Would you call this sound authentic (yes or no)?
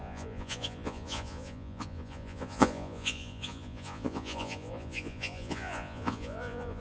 no